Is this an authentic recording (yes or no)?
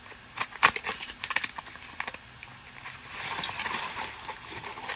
yes